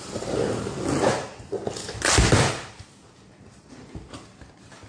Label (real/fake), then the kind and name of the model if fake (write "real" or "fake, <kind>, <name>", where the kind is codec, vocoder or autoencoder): real